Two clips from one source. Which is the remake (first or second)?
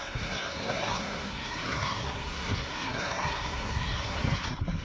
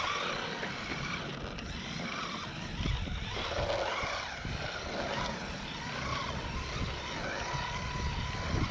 first